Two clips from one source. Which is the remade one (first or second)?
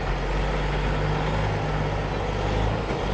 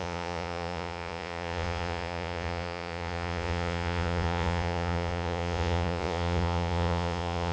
second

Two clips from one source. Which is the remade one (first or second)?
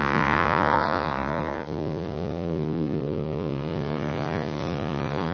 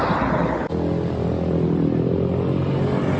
first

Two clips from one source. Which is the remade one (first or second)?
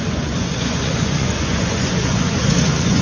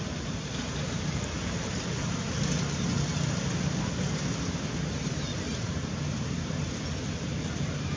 first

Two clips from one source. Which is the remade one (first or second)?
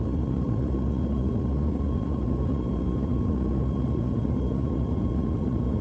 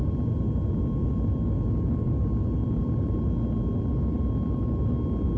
first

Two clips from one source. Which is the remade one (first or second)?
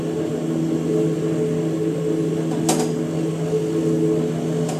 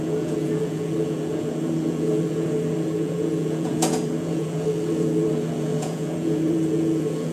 second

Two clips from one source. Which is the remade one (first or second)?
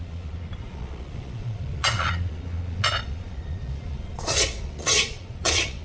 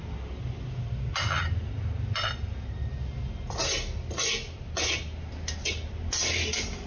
first